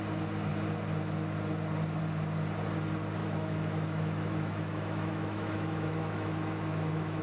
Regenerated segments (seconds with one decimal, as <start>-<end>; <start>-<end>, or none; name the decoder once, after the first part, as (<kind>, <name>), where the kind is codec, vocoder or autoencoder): 3.2-7.2 (autoencoder, DAC-VAE)